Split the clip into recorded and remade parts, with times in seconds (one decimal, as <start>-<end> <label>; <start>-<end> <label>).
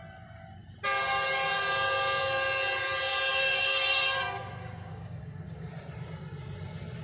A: 0.0-3.3 recorded; 3.3-5.7 remade; 5.7-7.0 recorded